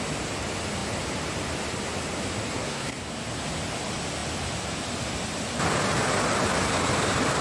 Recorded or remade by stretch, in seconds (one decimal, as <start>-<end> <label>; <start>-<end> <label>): 0.0-2.6 recorded; 2.6-3.2 remade; 3.2-7.4 recorded